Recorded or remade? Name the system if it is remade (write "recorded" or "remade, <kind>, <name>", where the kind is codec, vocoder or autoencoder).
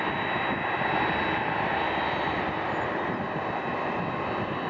recorded